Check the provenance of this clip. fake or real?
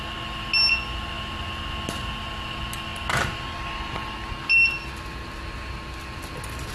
real